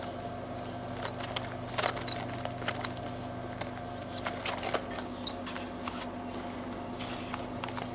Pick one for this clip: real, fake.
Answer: real